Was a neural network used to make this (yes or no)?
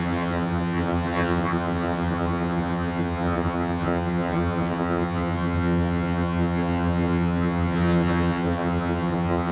yes